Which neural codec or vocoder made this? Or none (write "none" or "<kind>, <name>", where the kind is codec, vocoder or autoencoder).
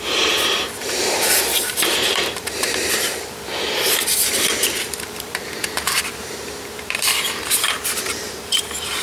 vocoder, BigVGAN v2